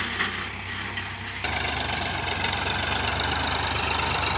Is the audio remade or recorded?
recorded